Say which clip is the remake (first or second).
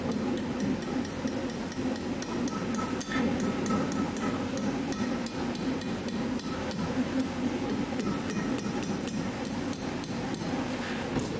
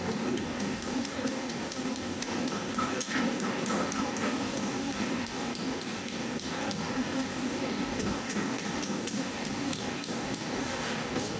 second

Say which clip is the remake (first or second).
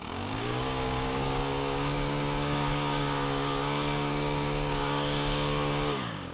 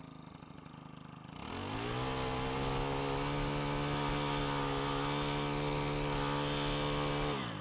first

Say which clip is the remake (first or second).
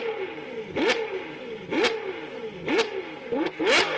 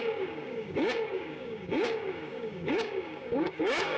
second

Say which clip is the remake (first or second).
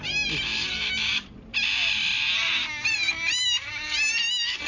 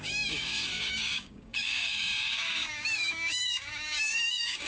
second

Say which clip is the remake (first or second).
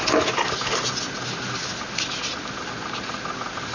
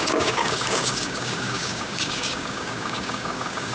second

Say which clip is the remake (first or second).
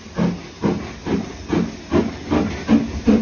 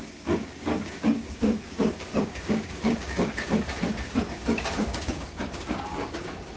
second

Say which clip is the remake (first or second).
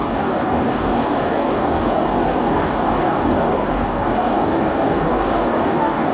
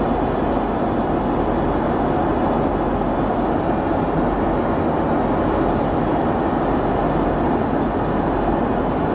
first